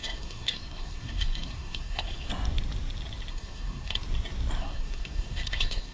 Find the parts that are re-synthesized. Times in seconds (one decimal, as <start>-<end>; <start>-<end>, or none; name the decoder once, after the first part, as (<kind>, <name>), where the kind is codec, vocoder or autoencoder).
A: 0.0-2.3 (codec, SNAC); 3.3-4.0; 4.6-5.9